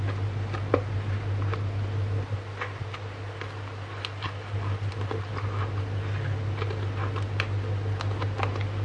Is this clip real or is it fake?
real